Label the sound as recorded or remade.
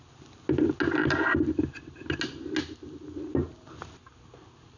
recorded